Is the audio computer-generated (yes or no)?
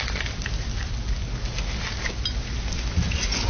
no